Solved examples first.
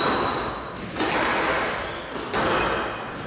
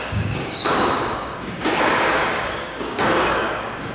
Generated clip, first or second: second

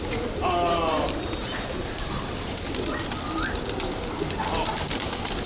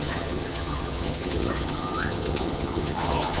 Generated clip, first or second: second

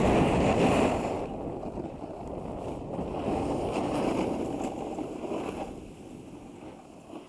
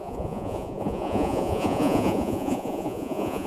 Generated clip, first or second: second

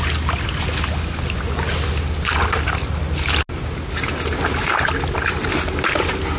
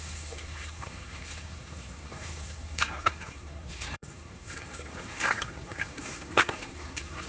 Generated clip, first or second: second